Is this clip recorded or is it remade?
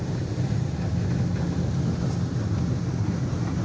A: recorded